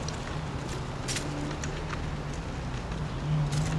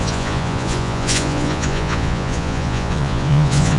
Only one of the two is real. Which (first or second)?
first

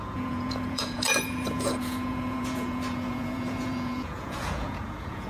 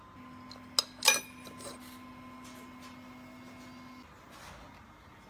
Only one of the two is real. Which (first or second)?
second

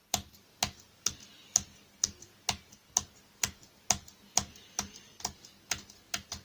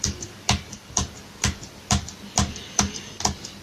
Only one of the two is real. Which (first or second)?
first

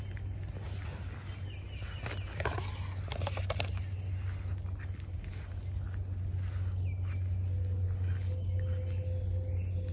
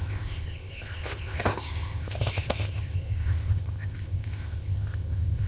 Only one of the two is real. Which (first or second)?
first